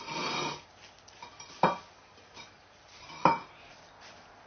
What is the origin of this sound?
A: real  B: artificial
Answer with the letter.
A